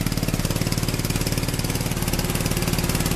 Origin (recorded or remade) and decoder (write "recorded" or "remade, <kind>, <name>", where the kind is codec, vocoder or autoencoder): recorded